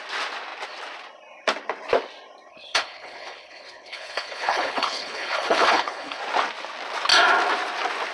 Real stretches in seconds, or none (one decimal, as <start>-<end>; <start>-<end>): 0.0-2.5; 6.2-8.1

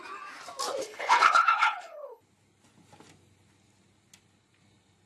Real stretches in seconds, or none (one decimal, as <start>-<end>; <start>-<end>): 0.0-0.8; 2.2-5.1

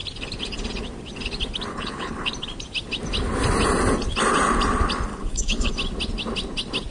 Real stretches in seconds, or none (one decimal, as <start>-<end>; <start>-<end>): 0.0-1.7; 2.3-5.1; 5.7-6.9